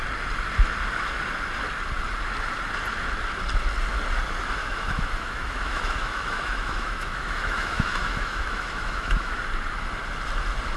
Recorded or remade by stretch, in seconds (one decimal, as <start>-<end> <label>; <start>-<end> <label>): 0.0-4.6 recorded; 4.6-9.4 remade; 9.4-10.8 recorded